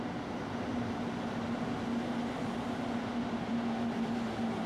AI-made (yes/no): no